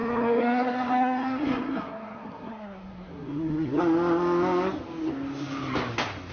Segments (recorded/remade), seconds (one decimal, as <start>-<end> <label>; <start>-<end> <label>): 0.0-3.8 remade; 3.8-6.3 recorded